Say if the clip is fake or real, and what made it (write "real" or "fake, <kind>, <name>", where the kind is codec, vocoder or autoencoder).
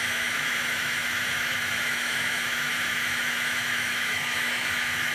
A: fake, autoencoder, DAC-VAE